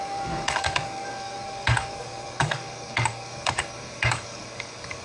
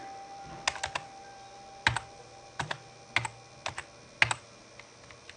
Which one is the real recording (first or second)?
second